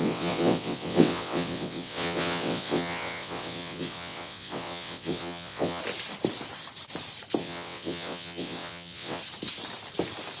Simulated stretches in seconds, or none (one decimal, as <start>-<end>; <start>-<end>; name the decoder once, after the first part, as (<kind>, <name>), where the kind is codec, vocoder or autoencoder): 0.0-5.8 (vocoder, WaveNeXt); 7.4-9.2